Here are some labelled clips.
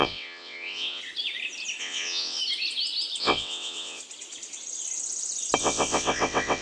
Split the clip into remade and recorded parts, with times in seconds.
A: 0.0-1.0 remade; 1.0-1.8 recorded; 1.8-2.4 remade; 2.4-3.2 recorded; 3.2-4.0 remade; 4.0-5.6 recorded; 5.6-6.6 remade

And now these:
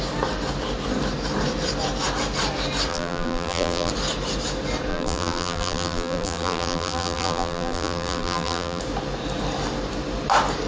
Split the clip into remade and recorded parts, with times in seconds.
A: 0.0-2.9 recorded; 2.9-3.9 remade; 3.9-4.9 recorded; 4.9-8.8 remade; 8.8-10.7 recorded

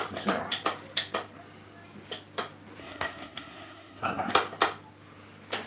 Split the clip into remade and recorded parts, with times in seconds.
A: 0.0-2.8 recorded; 2.8-4.3 remade; 4.3-5.7 recorded

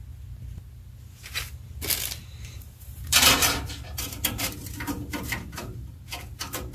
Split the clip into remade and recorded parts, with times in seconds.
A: 0.0-2.2 recorded; 2.2-6.0 remade; 6.0-6.7 recorded

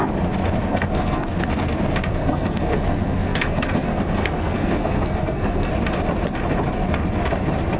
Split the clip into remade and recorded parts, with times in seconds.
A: 0.0-0.7 recorded; 0.7-1.3 remade; 1.3-2.1 recorded; 2.1-5.7 remade; 5.7-7.8 recorded

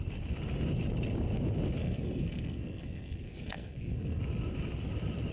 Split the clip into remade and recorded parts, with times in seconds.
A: 0.0-1.8 recorded; 1.8-4.2 remade; 4.2-5.3 recorded

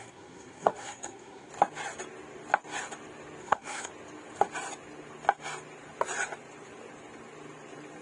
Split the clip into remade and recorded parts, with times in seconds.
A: 0.0-1.5 remade; 1.5-3.4 recorded; 3.4-3.9 remade; 3.9-8.0 recorded

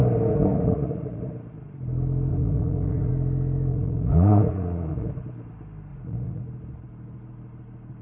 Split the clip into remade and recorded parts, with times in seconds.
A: 0.0-0.5 recorded; 0.5-1.2 remade; 1.2-2.3 recorded; 2.3-3.1 remade; 3.1-3.7 recorded; 3.7-5.1 remade; 5.1-5.9 recorded; 5.9-6.4 remade; 6.4-8.0 recorded